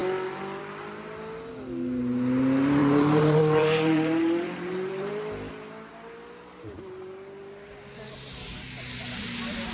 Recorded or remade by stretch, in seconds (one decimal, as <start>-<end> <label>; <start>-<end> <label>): 0.0-2.8 recorded; 2.8-5.1 remade; 5.1-9.7 recorded